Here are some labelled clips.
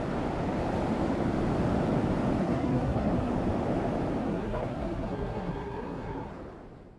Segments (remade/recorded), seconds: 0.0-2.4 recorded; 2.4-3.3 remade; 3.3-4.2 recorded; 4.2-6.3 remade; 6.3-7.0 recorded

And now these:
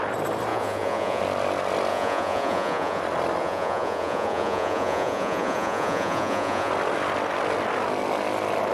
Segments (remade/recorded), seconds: 0.0-0.5 recorded; 0.5-1.2 remade; 1.2-1.9 recorded; 1.9-3.0 remade; 3.0-3.4 recorded; 3.4-6.7 remade; 6.7-8.7 recorded